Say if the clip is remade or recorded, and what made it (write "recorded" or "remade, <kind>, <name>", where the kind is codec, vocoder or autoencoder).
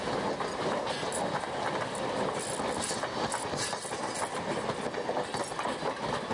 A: recorded